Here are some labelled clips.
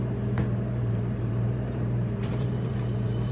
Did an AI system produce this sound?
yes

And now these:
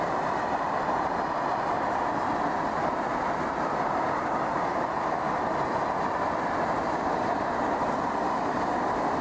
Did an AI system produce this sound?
no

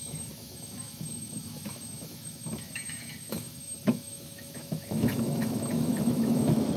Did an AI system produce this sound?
yes